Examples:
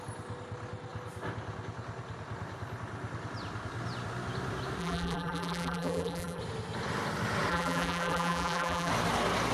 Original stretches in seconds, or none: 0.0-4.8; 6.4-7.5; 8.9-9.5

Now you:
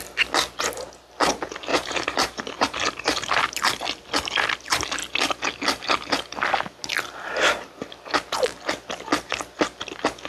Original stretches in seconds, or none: 0.0-1.7; 3.4-10.3